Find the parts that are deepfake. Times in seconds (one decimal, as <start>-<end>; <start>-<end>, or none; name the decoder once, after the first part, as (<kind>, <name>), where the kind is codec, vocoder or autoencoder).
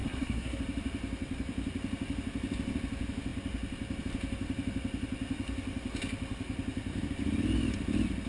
0.0-0.6 (codec, SNAC)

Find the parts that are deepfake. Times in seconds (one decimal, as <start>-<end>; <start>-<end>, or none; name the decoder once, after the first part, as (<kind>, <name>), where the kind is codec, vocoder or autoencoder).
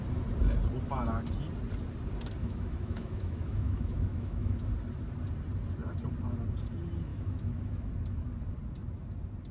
2.4-4.7 (autoencoder, DAC-VAE); 7.1-7.9